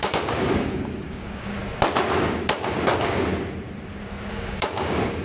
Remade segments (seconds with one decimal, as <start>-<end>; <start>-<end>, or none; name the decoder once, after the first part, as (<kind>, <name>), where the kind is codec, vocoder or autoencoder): 0.0-1.6 (codec, DAC); 2.7-3.3; 4.3-5.2